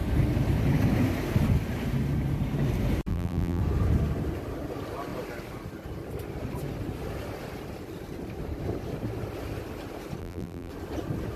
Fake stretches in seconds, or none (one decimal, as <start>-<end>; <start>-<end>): 3.1-3.6; 10.2-10.7